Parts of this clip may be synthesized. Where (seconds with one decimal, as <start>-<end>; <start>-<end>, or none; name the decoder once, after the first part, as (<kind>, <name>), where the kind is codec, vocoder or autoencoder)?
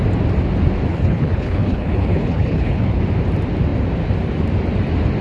0.9-3.0 (codec, HILCodec)